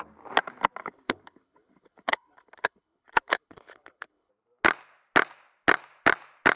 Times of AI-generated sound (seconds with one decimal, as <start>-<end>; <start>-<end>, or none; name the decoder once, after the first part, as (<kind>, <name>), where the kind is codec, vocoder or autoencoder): 0.8-4.3 (codec, HILCodec)